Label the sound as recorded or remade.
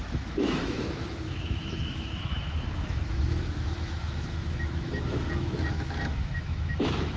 remade